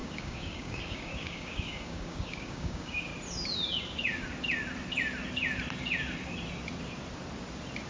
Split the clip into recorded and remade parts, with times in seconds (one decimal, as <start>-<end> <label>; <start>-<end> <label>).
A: 0.0-3.1 remade; 3.1-7.9 recorded